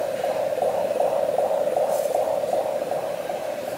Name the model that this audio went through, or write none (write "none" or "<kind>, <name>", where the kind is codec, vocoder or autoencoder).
vocoder, BigVGAN v2